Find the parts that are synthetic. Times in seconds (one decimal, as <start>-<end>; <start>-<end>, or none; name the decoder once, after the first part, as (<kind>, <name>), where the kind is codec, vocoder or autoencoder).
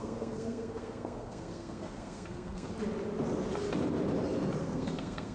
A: 0.0-2.7 (codec, SNAC); 4.6-5.3